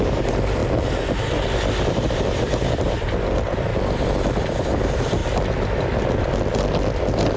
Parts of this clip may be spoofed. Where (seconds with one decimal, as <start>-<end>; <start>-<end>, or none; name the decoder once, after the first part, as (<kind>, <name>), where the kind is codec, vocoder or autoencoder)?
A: 0.0-0.6 (vocoder, BigVGAN v2); 1.9-3.7; 4.4-5.2